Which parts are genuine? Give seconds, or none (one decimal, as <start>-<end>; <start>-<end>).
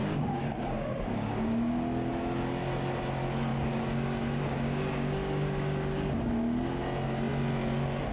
2.1-3.5; 6.8-8.1